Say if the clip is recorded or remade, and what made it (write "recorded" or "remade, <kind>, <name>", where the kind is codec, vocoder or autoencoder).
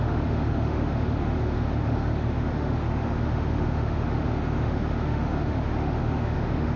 remade, autoencoder, DAC-VAE